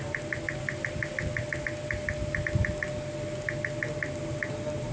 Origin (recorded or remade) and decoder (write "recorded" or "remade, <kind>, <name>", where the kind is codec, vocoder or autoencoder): recorded